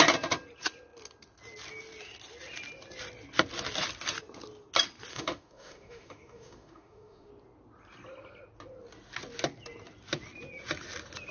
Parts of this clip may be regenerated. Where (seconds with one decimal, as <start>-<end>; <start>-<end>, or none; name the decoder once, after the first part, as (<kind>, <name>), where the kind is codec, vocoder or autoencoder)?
5.1-7.3 (autoencoder, DAC-VAE)